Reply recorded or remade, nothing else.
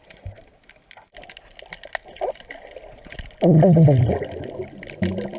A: recorded